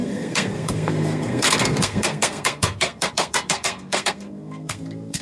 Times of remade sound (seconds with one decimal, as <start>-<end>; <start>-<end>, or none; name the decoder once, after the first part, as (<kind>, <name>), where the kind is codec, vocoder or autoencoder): 0.0-5.2 (codec, SNAC)